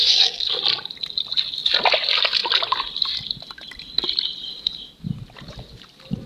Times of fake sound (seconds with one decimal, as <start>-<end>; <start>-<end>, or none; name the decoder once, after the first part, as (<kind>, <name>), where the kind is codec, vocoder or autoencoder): 0.0-0.6 (codec, DAC)